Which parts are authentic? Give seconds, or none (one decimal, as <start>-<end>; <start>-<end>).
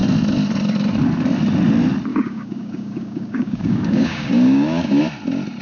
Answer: 0.0-2.1; 5.0-5.6